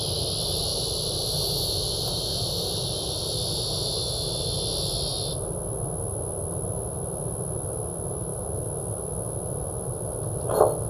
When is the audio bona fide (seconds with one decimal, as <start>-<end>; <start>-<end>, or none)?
0.0-10.9